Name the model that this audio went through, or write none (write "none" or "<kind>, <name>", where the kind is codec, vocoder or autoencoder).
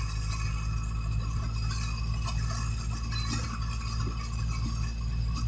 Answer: none